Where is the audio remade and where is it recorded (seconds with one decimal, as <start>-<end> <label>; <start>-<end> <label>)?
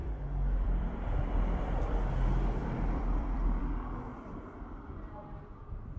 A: 0.0-2.1 remade; 2.1-2.6 recorded; 2.6-3.6 remade; 3.6-6.0 recorded